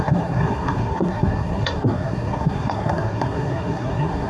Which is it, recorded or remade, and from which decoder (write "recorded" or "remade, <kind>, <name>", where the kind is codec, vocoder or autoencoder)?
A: remade, codec, SNAC